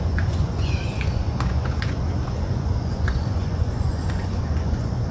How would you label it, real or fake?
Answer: fake